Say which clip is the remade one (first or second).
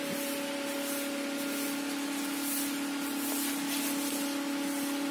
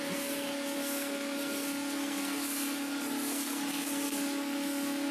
second